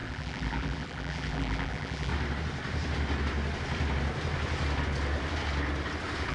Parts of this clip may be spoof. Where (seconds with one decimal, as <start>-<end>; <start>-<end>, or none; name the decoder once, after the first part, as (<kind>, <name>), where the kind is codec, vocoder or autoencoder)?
0.0-2.1 (vocoder, BigVGAN v2)